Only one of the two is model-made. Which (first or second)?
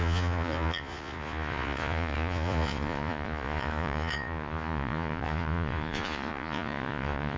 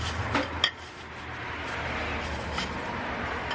first